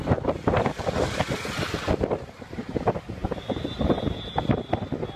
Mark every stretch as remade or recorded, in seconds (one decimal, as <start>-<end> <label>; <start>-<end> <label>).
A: 0.0-5.2 recorded